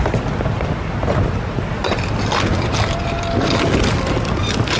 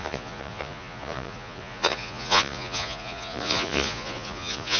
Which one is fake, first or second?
second